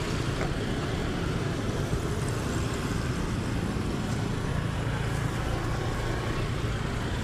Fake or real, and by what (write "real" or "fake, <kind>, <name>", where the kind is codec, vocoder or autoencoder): real